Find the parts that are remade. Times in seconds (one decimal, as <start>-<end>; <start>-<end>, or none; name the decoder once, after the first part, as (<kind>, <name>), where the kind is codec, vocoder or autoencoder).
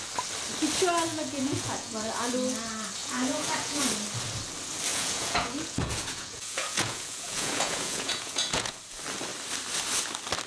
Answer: 1.1-2.3 (vocoder, Vocos); 3.0-3.8; 4.9-8.8